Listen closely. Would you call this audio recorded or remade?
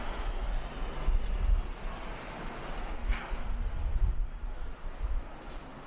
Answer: recorded